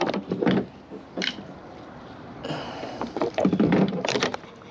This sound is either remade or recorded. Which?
remade